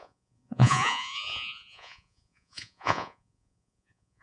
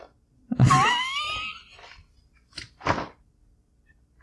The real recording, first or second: second